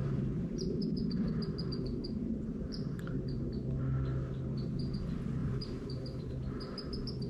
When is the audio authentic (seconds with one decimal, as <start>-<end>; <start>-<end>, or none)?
3.8-5.4; 6.3-7.3